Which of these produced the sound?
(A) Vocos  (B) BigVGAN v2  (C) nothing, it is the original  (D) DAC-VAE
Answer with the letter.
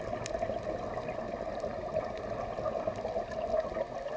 C